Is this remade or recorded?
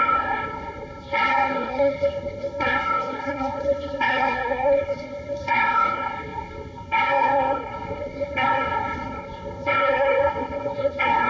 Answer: remade